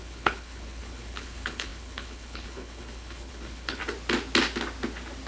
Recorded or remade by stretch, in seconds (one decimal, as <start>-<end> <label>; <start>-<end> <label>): 0.0-3.8 remade; 3.8-5.3 recorded